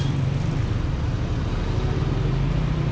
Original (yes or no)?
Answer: yes